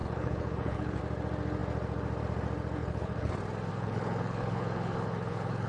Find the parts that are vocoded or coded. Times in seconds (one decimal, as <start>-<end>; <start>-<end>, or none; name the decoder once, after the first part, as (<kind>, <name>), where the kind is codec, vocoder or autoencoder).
0.0-1.0 (codec, HILCodec); 2.8-3.3; 3.7-5.7